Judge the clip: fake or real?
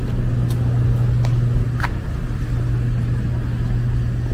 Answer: real